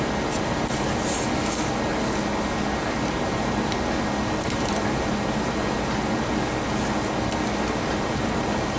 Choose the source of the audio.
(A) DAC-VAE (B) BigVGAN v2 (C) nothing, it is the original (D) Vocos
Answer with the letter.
C